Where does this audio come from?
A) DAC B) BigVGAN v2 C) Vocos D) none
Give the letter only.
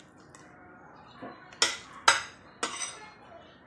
D